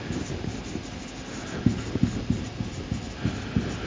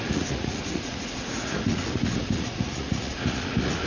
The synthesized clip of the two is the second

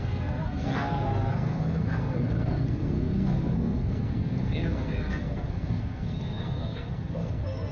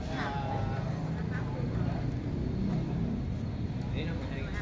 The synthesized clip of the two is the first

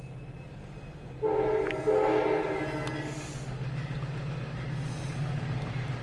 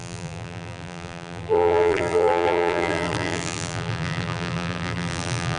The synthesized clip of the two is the second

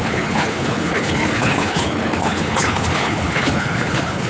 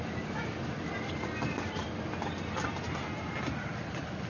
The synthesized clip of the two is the first